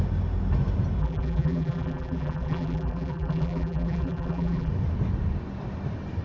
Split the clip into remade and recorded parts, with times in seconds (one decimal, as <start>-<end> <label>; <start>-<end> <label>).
0.0-1.0 recorded; 1.0-4.7 remade; 4.7-6.2 recorded